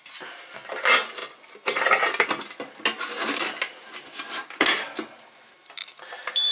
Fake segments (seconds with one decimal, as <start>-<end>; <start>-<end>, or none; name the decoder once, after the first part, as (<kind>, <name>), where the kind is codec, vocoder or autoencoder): 5.8-6.5 (vocoder, BigVGAN v2)